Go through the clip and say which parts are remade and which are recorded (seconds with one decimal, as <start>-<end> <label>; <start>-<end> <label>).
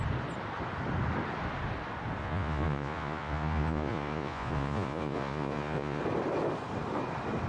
0.0-2.2 recorded; 2.2-6.0 remade; 6.0-7.5 recorded